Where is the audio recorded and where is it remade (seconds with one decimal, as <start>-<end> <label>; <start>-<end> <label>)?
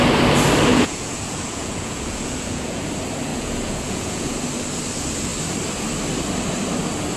0.0-0.7 recorded; 0.7-2.9 remade; 2.9-3.3 recorded; 3.3-4.4 remade; 4.4-7.2 recorded